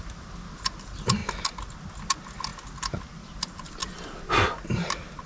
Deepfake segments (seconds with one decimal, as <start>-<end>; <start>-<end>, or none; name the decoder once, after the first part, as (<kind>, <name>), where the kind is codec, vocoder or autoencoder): none